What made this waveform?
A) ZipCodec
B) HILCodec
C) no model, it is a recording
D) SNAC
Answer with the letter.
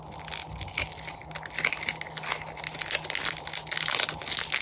C